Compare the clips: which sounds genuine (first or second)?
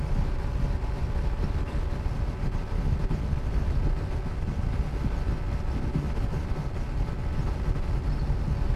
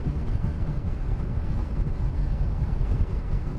first